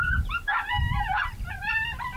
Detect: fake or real fake